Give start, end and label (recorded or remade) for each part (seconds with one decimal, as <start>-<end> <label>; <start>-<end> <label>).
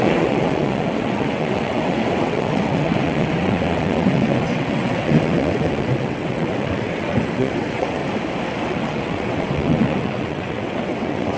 0.0-8.0 remade; 8.0-8.6 recorded; 8.6-11.4 remade